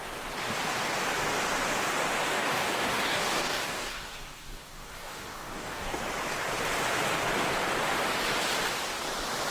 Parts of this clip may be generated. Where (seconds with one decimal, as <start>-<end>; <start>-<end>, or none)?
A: 2.3-6.0